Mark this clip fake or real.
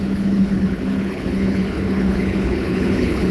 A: fake